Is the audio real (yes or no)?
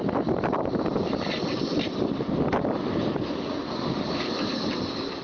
yes